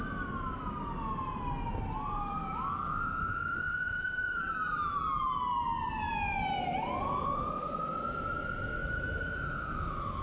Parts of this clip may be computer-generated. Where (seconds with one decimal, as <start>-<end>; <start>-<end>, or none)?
2.4-5.0; 8.8-10.2